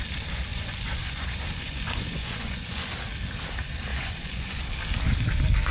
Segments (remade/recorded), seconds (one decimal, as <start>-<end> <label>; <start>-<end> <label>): 0.0-0.5 recorded; 0.5-2.9 remade; 2.9-3.9 recorded; 3.9-4.6 remade; 4.6-5.7 recorded